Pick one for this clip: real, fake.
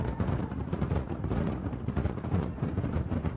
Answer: fake